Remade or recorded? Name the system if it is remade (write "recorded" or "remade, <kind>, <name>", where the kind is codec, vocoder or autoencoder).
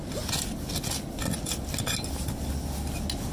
recorded